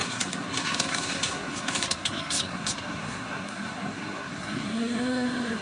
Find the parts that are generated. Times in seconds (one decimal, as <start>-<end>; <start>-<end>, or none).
0.0-5.6